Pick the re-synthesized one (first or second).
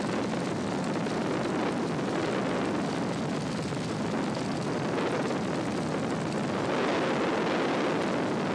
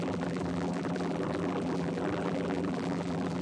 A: second